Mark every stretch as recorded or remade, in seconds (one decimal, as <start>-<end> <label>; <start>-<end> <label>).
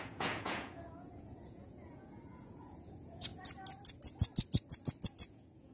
0.0-3.3 remade; 3.3-5.3 recorded; 5.3-5.7 remade